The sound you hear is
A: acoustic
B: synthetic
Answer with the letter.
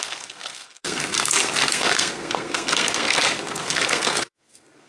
B